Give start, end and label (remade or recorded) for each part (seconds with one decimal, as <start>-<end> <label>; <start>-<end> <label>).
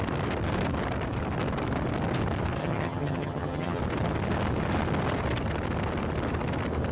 0.0-2.6 recorded; 2.6-3.8 remade; 3.8-6.9 recorded